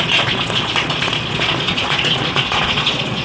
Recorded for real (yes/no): no